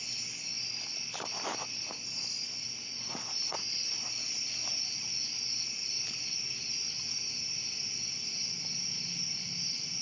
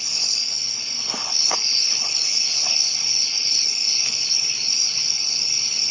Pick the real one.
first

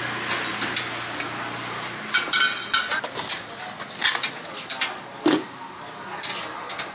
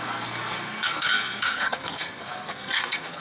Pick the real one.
first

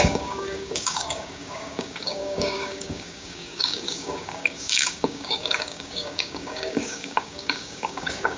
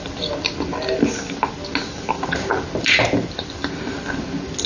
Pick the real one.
second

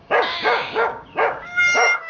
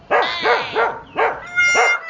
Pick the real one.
second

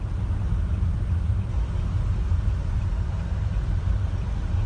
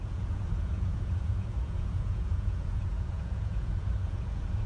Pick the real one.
first